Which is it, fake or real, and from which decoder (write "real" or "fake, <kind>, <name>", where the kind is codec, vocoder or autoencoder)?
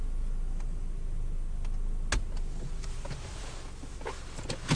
real